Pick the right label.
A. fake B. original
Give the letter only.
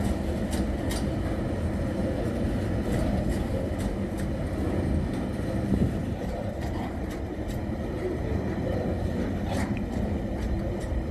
B